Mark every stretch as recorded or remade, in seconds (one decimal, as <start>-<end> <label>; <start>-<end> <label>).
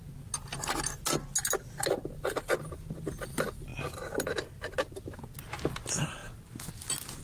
0.0-7.2 recorded